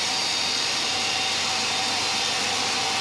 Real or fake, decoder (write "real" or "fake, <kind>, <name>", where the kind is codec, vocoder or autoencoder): real